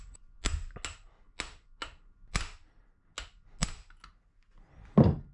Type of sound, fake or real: real